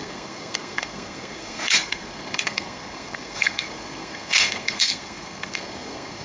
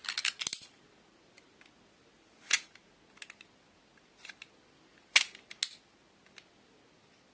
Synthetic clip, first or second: first